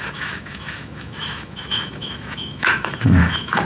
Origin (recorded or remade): remade